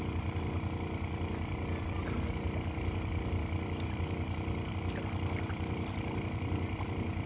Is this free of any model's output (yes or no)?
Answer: yes